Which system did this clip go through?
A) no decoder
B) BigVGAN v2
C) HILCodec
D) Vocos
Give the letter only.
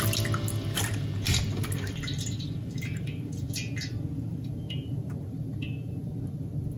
A